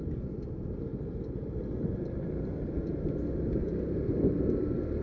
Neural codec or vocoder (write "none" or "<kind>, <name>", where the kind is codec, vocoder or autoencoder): none